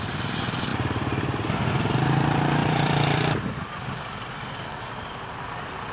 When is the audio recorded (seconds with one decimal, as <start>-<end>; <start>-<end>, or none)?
none